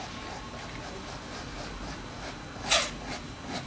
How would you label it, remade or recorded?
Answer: recorded